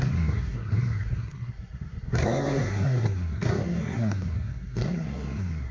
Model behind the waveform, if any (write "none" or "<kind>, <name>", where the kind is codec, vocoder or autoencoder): codec, SNAC